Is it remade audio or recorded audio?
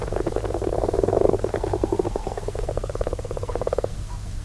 remade